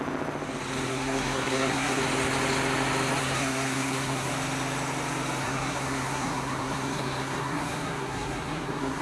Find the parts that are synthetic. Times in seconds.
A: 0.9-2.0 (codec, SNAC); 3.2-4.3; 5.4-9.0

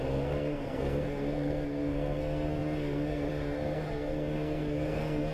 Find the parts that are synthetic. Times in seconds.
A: 0.0-5.3 (codec, SNAC)

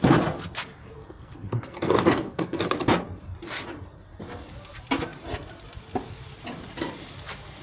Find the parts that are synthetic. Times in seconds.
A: 0.8-2.7 (codec, SNAC)

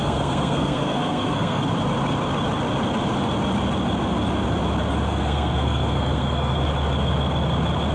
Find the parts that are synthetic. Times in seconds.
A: 0.0-1.6 (codec, SNAC); 5.1-6.6